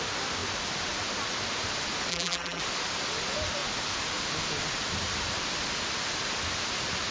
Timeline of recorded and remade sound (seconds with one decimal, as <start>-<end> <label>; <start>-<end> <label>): 0.0-2.1 recorded; 2.1-2.6 remade; 2.6-7.1 recorded